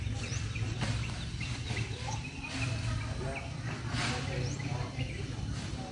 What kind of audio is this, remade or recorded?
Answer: remade